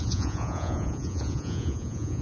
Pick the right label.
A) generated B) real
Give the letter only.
A